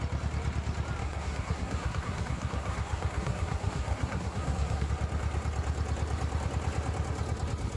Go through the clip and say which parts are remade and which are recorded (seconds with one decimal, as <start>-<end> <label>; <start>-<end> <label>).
0.0-1.0 recorded; 1.0-4.9 remade; 4.9-7.8 recorded